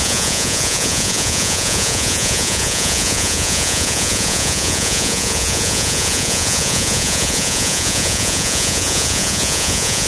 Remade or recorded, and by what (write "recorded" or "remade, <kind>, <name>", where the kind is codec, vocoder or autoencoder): remade, vocoder, Vocos